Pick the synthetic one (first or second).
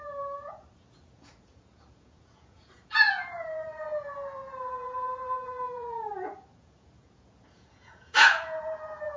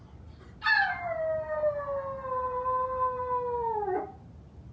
first